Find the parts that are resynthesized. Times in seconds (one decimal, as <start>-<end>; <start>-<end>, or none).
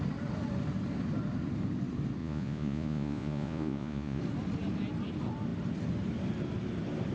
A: 2.2-4.2